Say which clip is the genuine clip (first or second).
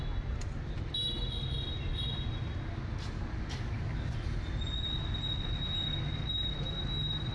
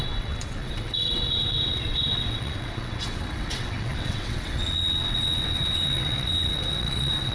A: first